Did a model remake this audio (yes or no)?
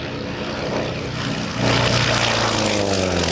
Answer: no